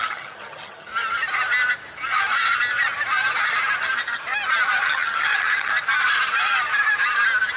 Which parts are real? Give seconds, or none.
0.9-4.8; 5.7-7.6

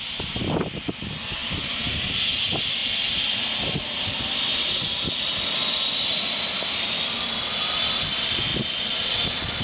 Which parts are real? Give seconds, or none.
0.0-2.8; 3.4-8.5; 9.1-9.6

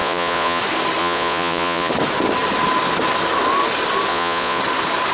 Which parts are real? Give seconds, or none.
0.6-1.0; 1.9-4.1; 4.6-5.1

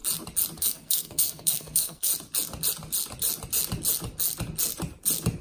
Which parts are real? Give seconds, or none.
0.0-0.6; 2.1-5.4

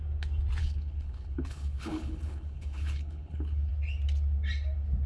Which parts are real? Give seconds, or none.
0.0-0.6; 3.7-5.1

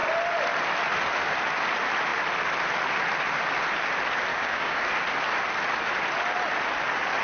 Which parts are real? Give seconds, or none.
0.0-4.3; 4.8-7.2

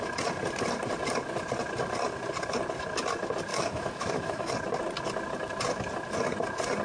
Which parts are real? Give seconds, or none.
0.0-3.5; 4.5-6.8